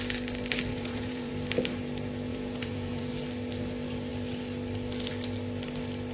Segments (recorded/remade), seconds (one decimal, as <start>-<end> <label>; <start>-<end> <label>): 0.0-0.7 recorded; 0.7-1.3 remade; 1.3-2.3 recorded; 2.3-3.1 remade; 3.1-6.1 recorded